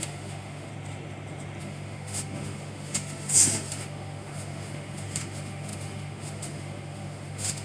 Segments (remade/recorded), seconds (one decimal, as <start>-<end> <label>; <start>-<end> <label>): 0.0-0.7 remade; 0.7-1.6 recorded; 1.6-7.6 remade